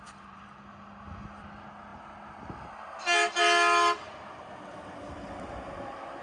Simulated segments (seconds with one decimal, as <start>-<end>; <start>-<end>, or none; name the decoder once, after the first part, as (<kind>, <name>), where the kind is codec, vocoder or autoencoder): none